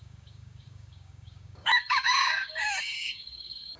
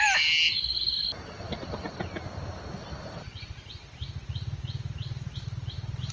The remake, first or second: first